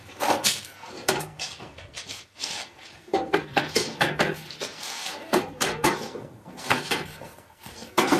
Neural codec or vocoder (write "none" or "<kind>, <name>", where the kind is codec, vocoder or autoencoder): codec, SNAC